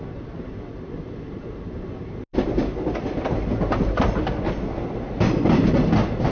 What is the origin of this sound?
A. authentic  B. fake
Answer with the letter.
A